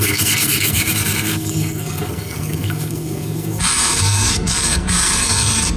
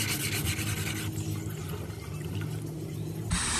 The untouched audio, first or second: second